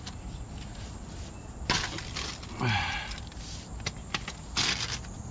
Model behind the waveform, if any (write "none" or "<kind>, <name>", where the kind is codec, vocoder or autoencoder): none